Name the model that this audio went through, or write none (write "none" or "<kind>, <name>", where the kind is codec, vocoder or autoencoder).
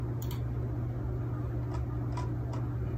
none